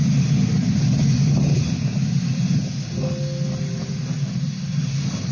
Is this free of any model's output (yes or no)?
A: yes